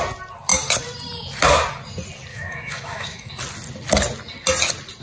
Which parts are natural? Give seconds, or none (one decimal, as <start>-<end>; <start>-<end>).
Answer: 0.0-2.3; 3.3-5.0